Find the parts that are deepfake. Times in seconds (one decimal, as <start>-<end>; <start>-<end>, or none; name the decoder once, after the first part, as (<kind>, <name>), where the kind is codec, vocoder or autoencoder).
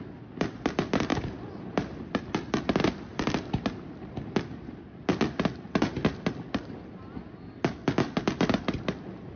none